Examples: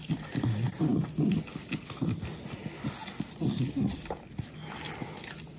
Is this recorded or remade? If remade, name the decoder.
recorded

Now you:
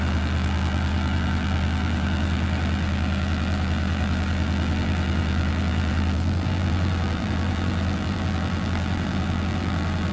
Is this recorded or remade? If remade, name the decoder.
remade, vocoder, BigVGAN v2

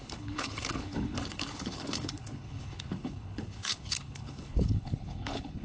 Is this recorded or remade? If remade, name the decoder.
remade, codec, HILCodec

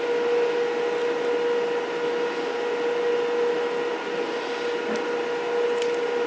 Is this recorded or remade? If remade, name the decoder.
recorded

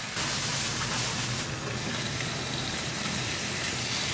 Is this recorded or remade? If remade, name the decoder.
recorded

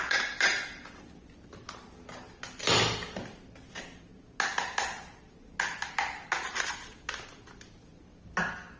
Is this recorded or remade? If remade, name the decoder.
recorded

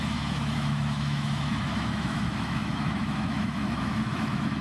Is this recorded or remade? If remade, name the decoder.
remade, autoencoder, DAC-VAE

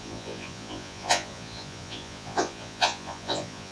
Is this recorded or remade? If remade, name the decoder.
remade, vocoder, Vocos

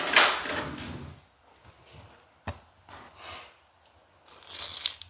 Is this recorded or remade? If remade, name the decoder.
recorded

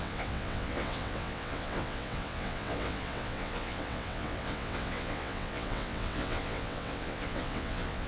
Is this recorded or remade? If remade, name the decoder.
remade, vocoder, WaveNeXt